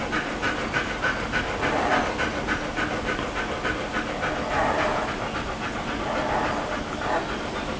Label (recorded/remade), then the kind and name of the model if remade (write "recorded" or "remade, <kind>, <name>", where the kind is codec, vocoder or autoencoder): recorded